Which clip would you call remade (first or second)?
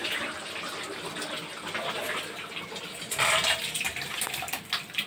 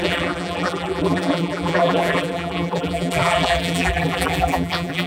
second